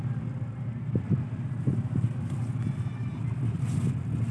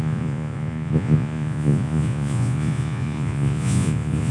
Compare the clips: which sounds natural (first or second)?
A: first